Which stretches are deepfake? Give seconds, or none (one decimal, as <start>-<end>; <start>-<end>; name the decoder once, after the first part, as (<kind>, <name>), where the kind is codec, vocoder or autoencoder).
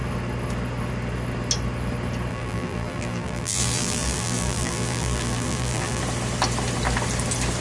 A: 2.3-6.0 (vocoder, BigVGAN v2)